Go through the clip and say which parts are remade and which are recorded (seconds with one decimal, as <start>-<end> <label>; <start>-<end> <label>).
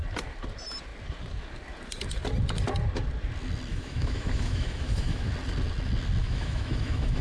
0.0-3.7 recorded; 3.7-5.3 remade; 5.3-6.2 recorded; 6.2-7.2 remade